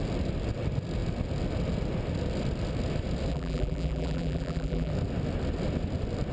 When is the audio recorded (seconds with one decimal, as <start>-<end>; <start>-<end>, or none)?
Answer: 0.0-3.3; 4.9-6.3

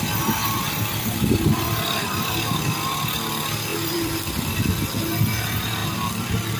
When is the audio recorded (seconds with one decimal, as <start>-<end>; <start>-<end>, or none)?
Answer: 0.0-0.4; 2.3-3.7; 4.5-5.8

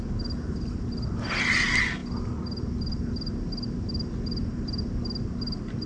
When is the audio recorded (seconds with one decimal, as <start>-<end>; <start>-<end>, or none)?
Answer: 0.0-5.9

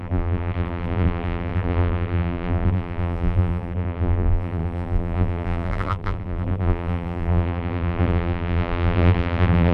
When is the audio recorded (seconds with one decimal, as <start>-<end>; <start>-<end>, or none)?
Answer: none

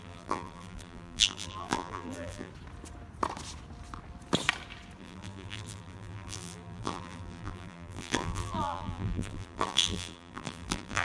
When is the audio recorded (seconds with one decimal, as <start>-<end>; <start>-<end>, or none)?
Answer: 2.5-5.0

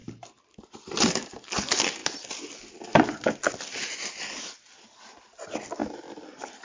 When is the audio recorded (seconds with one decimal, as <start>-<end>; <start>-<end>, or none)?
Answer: 1.3-6.6

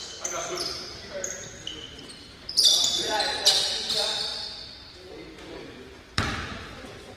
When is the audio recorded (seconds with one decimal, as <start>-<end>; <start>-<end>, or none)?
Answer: 4.3-5.1